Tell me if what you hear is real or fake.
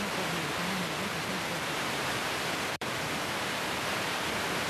fake